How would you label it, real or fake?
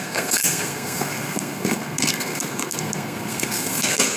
fake